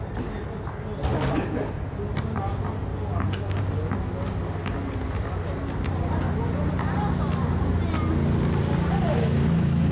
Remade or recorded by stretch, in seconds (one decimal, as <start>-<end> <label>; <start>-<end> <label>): 0.0-1.1 recorded; 1.1-1.7 remade; 1.7-2.9 recorded; 2.9-3.6 remade; 3.6-9.9 recorded